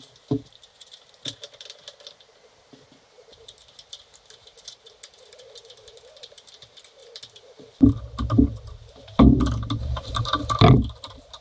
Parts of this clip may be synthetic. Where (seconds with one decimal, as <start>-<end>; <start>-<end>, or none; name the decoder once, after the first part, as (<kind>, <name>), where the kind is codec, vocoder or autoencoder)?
9.8-10.6 (vocoder, BigVGAN v2)